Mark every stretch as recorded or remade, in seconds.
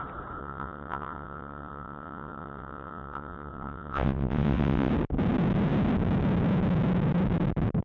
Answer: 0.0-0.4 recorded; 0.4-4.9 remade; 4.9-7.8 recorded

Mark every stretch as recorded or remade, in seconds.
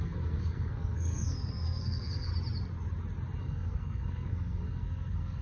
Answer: 0.0-2.3 remade; 2.3-3.4 recorded; 3.4-5.4 remade